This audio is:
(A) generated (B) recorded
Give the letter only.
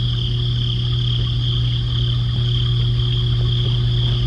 B